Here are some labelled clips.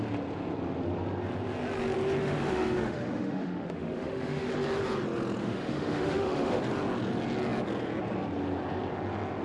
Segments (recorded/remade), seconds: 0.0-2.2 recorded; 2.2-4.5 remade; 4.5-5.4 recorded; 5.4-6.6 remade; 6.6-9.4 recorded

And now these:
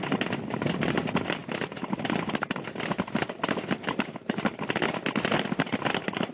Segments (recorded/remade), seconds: 0.0-6.3 recorded

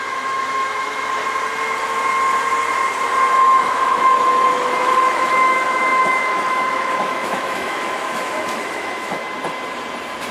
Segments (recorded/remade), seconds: 0.0-1.2 remade; 1.2-3.3 recorded; 3.3-9.2 remade; 9.2-10.3 recorded

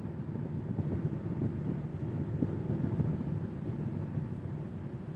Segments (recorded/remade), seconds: 0.0-1.9 recorded; 1.9-2.5 remade; 2.5-5.2 recorded

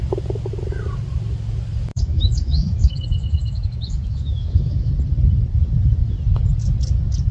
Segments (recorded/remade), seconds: 0.0-1.9 recorded; 1.9-4.9 remade; 4.9-7.3 recorded